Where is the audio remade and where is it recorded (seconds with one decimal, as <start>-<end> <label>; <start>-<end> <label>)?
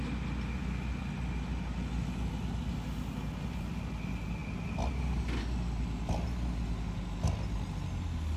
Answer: 0.0-8.4 recorded